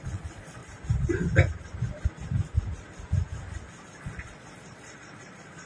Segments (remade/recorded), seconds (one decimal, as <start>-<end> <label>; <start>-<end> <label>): 0.0-0.6 remade; 0.6-4.0 recorded; 4.0-5.7 remade